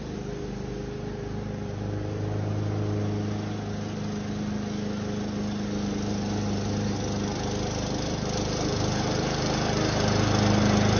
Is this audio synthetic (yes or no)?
no